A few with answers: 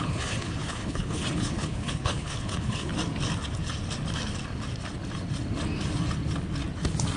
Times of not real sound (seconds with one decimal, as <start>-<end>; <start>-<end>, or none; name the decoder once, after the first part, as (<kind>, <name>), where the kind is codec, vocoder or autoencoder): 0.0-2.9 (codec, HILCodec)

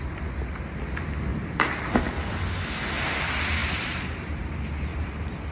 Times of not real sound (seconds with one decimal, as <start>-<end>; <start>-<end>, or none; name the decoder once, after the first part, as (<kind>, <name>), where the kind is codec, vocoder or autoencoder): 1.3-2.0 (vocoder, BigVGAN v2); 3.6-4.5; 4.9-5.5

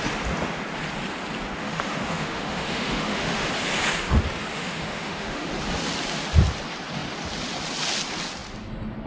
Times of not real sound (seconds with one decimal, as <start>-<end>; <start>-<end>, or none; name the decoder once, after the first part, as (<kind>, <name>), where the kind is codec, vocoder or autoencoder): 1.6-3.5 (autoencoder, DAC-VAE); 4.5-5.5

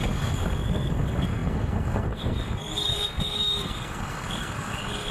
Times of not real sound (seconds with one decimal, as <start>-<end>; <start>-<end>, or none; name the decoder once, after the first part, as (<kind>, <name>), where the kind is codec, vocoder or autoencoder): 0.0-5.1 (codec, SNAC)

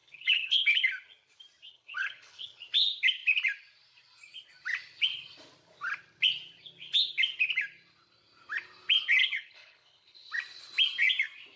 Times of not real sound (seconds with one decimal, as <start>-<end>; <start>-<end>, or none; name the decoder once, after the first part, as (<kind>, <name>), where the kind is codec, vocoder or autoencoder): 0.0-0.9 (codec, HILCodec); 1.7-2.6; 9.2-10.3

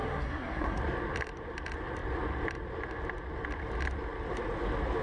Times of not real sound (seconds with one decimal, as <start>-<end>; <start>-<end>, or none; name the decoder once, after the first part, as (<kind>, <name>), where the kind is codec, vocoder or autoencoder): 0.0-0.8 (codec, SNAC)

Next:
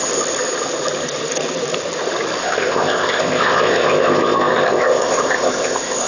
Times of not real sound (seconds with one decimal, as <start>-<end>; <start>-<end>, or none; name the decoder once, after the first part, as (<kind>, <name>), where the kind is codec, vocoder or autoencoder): 2.4-6.1 (codec, ZipCodec)